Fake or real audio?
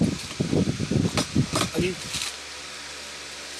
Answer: real